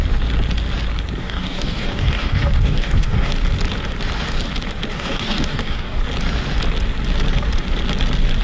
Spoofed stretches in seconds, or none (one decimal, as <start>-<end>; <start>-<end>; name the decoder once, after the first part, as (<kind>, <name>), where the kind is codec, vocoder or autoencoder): 1.2-3.3 (codec, DAC); 4.9-6.0